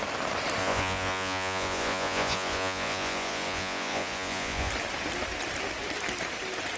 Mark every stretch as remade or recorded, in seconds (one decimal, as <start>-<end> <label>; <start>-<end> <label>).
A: 0.0-0.6 recorded; 0.6-4.7 remade; 4.7-6.8 recorded